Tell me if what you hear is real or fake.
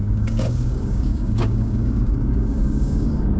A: fake